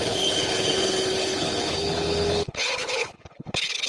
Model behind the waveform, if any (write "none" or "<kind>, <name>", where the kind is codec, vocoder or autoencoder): codec, HILCodec